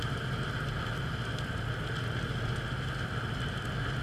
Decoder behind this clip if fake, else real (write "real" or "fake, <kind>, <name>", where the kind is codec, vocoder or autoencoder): real